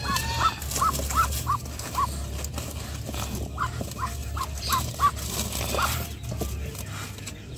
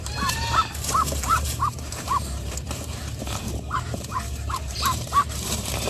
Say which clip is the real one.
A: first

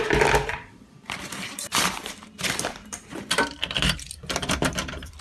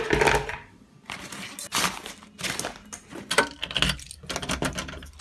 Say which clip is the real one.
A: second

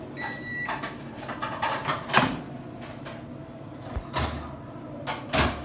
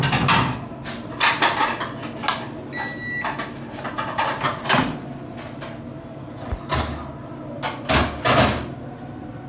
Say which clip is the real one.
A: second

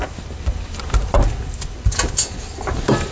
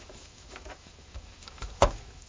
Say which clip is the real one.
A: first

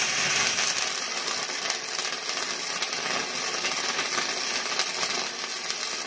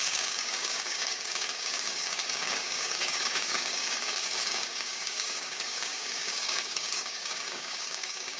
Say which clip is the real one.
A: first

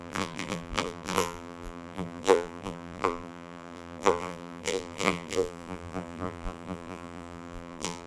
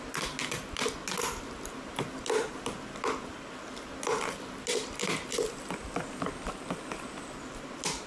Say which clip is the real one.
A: second